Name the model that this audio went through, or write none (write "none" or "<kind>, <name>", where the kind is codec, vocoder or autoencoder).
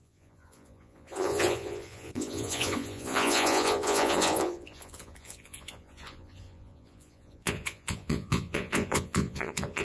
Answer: vocoder, Vocos